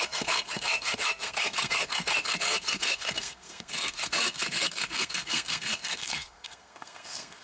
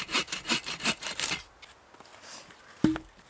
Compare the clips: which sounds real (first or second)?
second